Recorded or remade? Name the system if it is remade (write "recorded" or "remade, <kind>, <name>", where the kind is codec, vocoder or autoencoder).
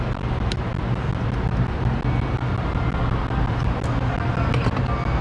recorded